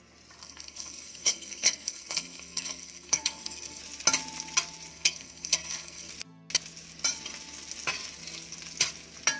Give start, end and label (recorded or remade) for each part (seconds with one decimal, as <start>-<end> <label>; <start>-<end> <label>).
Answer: 0.0-0.4 recorded; 0.4-3.8 remade; 3.8-4.9 recorded; 4.9-6.1 remade; 6.1-9.4 recorded